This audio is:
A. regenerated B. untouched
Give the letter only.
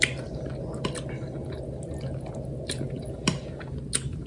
B